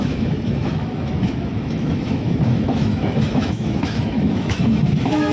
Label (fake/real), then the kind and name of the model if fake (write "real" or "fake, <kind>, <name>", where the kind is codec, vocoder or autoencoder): fake, autoencoder, DAC-VAE